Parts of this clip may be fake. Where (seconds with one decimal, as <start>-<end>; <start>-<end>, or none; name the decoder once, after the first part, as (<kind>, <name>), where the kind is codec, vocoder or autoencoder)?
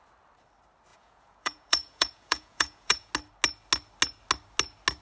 0.9-3.1 (vocoder, Vocos)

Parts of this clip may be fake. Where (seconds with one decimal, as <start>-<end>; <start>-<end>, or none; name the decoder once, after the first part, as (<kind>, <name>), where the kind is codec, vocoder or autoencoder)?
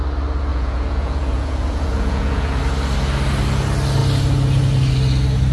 0.5-2.6 (vocoder, Vocos)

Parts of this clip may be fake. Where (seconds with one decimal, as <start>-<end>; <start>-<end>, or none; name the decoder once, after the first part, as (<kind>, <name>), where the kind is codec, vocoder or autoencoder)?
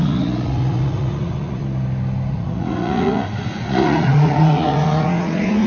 0.0-1.6 (vocoder, Vocos); 2.3-5.7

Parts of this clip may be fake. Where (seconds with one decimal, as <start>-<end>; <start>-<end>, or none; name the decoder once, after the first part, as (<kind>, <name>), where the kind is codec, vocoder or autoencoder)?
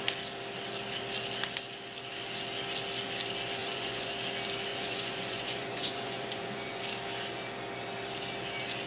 3.6-4.1 (vocoder, Vocos); 4.7-6.8